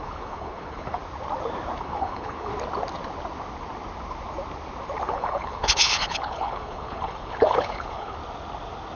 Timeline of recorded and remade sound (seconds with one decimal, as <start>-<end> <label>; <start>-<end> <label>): 0.0-1.0 remade; 1.0-1.8 recorded; 1.8-2.5 remade; 2.5-5.1 recorded; 5.1-8.2 remade; 8.2-9.0 recorded

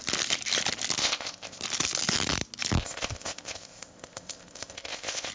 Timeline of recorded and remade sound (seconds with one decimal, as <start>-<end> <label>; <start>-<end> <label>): 0.0-1.0 recorded; 1.0-1.6 remade; 1.6-2.8 recorded; 2.8-5.3 remade